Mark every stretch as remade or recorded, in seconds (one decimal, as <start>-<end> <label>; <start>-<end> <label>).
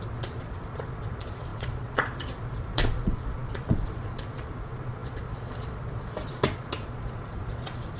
0.0-8.0 remade